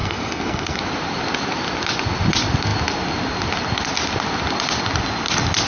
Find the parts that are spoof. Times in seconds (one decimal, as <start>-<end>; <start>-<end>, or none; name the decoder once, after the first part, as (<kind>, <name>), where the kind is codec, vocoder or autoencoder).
0.0-0.8 (codec, SNAC)